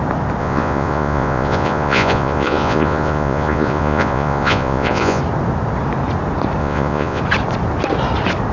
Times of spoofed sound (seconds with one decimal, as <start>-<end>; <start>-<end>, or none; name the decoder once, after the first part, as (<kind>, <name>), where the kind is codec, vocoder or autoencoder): 0.4-5.2 (vocoder, Vocos); 6.6-7.2